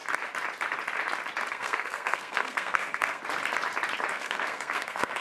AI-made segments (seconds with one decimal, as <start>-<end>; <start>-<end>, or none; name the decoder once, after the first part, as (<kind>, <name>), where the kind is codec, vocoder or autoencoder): 1.5-3.2 (codec, SNAC); 4.1-5.2

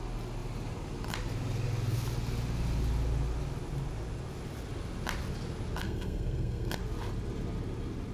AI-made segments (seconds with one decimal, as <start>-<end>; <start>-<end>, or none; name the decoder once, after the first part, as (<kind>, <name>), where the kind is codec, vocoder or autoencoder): 5.8-6.8 (codec, SNAC)

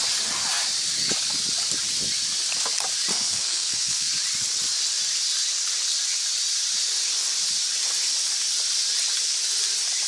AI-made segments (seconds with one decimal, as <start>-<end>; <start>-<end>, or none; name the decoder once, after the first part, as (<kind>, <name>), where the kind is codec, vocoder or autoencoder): 3.1-4.1 (codec, SNAC)

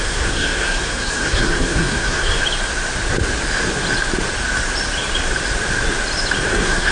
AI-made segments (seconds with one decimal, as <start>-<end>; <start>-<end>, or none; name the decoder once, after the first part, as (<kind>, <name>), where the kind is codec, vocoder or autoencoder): 0.0-2.4 (codec, SNAC); 6.5-6.9

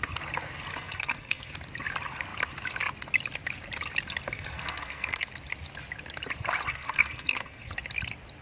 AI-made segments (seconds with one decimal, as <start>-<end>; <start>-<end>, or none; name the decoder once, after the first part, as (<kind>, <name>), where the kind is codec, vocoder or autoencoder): 0.7-1.5 (codec, SNAC); 4.3-5.3; 6.7-7.7

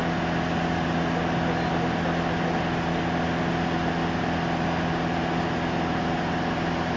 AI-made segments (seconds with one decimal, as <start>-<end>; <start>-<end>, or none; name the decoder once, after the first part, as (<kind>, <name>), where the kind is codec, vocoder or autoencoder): none